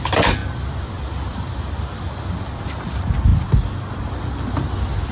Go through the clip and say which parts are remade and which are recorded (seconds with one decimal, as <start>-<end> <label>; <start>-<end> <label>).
0.0-5.1 recorded